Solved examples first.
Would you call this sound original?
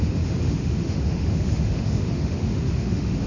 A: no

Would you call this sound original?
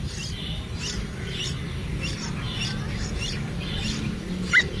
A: yes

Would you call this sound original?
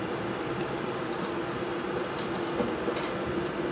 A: yes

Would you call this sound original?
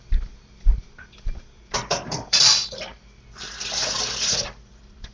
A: no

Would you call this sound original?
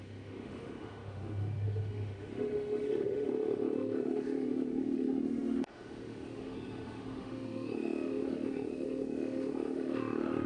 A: no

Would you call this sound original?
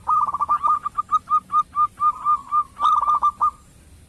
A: yes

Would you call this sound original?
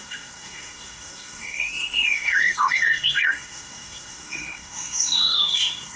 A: no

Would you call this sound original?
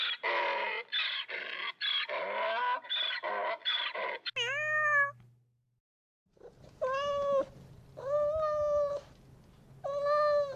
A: yes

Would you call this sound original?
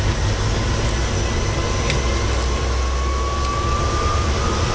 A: yes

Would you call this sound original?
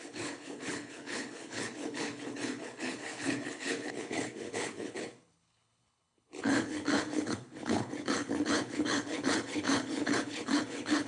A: no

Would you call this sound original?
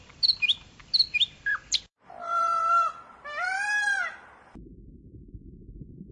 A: no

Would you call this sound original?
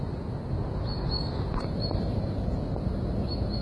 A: yes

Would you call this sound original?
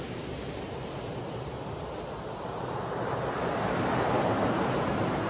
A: no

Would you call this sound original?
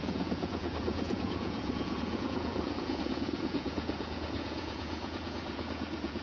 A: no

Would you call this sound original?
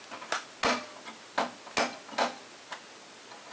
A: yes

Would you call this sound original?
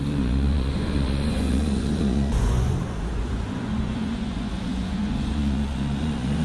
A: no